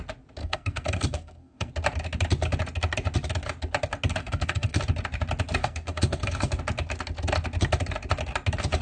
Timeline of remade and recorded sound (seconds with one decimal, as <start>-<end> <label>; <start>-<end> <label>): 0.0-0.4 recorded; 0.4-1.7 remade; 1.7-4.2 recorded; 4.2-4.8 remade; 4.8-5.6 recorded; 5.6-6.6 remade; 6.6-8.8 recorded